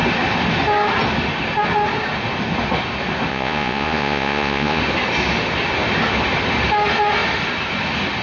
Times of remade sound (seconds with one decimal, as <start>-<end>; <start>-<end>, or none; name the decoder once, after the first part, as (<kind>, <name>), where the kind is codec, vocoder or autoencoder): 3.3-4.8 (vocoder, Vocos)